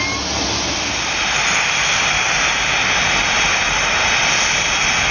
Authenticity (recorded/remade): recorded